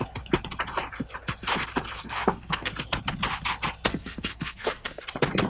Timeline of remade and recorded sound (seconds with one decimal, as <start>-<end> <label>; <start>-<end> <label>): 0.0-2.0 recorded; 2.0-2.7 remade; 2.7-3.9 recorded; 3.9-5.0 remade; 5.0-5.5 recorded